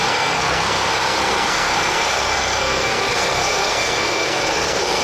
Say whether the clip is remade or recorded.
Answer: remade